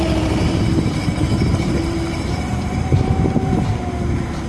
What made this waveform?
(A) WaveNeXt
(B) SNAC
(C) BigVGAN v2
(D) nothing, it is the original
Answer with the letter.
C